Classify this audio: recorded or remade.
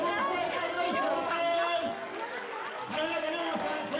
remade